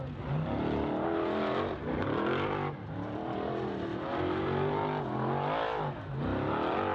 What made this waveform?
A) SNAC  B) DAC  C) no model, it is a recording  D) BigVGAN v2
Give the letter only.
C